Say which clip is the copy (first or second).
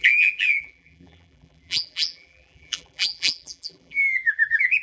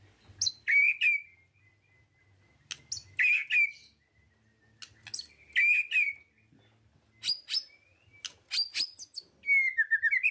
first